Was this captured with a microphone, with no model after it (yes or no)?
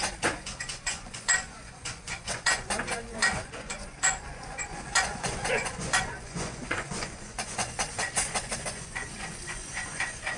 no